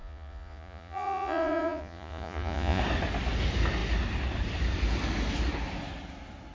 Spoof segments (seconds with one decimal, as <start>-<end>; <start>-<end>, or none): 0.0-2.8